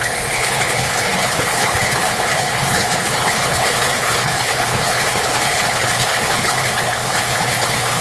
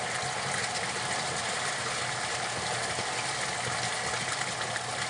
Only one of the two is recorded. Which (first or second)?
second